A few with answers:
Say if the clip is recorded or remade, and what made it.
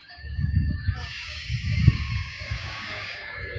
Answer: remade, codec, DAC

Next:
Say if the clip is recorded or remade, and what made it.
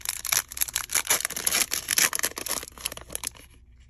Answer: recorded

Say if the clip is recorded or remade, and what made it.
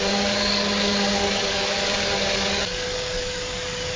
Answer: remade, codec, DAC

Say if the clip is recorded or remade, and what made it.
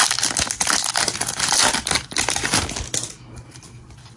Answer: recorded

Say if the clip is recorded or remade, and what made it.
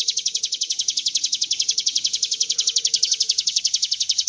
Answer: remade, codec, DAC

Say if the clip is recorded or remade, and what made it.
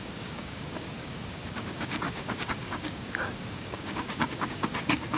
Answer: remade, codec, DAC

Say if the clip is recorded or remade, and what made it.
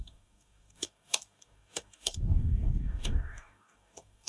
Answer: remade, codec, DAC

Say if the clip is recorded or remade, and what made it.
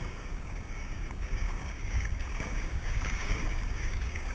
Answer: remade, codec, DAC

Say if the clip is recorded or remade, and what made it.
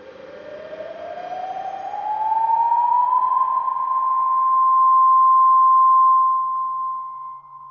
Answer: recorded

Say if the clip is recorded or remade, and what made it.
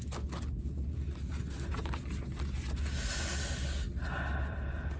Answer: recorded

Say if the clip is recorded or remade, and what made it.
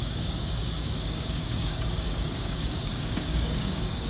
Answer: remade, codec, DAC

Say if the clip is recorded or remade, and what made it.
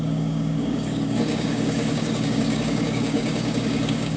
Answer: remade, codec, DAC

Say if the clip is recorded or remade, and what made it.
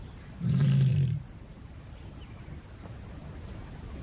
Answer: recorded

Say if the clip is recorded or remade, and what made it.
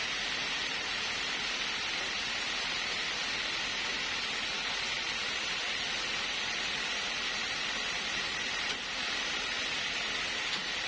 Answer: recorded